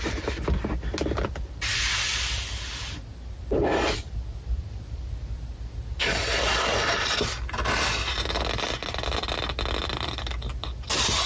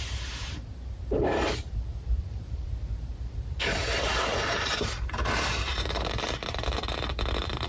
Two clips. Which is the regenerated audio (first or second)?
second